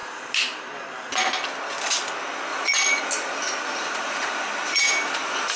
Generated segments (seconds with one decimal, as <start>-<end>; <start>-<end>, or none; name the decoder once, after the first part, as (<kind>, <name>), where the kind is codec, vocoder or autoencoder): 2.5-3.0 (vocoder, Vocos); 3.7-4.4